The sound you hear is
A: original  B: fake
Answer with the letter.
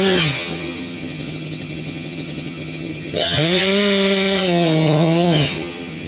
B